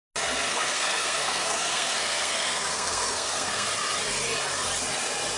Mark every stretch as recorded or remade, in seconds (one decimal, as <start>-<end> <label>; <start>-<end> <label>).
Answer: 0.0-0.5 recorded; 0.5-3.7 remade; 3.7-5.4 recorded